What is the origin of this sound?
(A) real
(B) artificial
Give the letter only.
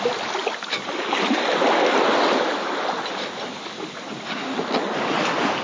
A